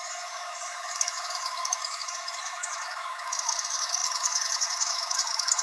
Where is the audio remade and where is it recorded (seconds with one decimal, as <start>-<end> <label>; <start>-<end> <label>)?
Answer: 0.0-5.6 remade